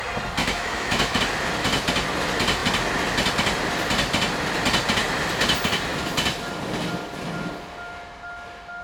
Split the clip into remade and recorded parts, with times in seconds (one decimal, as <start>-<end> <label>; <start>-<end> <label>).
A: 0.0-0.4 recorded; 0.4-1.2 remade; 1.2-8.8 recorded